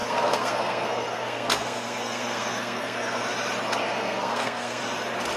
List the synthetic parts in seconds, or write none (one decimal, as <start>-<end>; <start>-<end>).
0.0-3.2; 3.9-4.8